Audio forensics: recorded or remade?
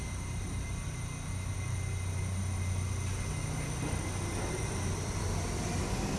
recorded